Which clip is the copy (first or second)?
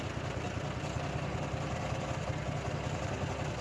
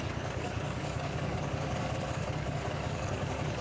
second